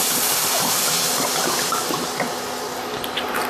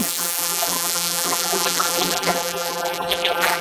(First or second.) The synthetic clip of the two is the second